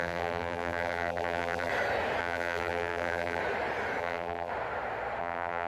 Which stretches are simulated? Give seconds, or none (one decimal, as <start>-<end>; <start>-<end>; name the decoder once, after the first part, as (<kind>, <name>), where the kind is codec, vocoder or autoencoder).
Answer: 0.0-1.7 (vocoder, BigVGAN v2); 2.2-3.4; 4.0-4.5; 5.2-5.7